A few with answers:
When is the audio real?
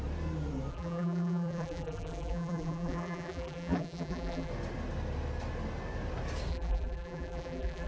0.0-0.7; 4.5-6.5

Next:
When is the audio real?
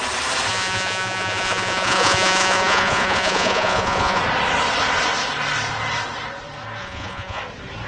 0.0-0.5; 4.2-6.8; 7.4-7.9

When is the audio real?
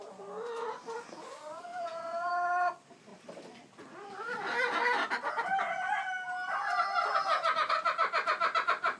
0.0-1.7; 2.3-7.1; 7.7-9.0